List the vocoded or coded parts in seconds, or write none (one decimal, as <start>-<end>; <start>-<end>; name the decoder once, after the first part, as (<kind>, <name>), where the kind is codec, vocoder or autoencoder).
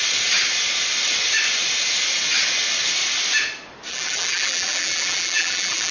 3.9-5.9 (vocoder, BigVGAN v2)